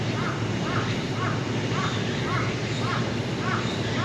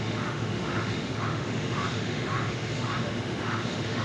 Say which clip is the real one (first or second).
first